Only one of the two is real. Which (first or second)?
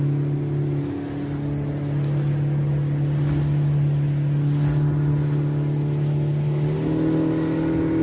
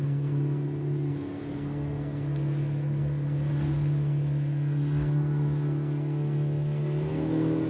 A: first